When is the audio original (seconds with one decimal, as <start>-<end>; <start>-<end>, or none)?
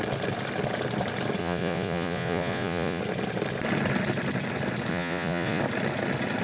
0.0-1.4; 3.0-4.9; 5.6-6.4